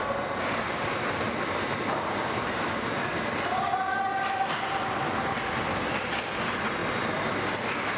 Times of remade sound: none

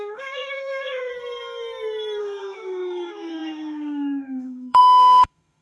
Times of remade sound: 0.0-1.1 (autoencoder, DAC-VAE); 2.2-5.6

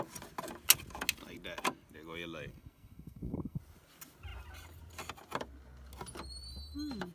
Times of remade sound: 2.5-3.6 (codec, SNAC)